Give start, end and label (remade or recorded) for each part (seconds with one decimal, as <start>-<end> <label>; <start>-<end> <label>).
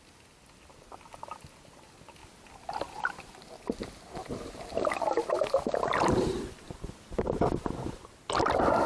0.0-8.9 recorded